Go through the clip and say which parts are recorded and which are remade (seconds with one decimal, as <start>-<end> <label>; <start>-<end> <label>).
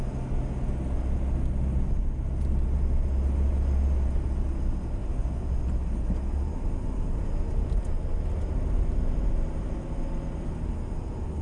0.0-11.4 recorded